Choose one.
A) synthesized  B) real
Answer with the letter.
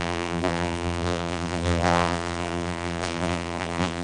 A